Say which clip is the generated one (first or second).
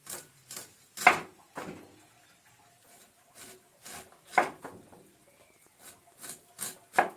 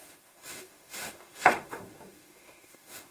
second